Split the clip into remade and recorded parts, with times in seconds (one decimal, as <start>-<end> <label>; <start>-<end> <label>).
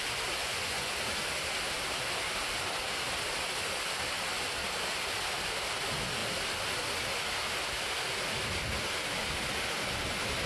0.0-0.4 recorded; 0.4-0.9 remade; 0.9-10.5 recorded